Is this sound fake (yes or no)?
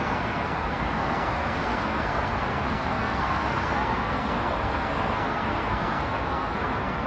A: yes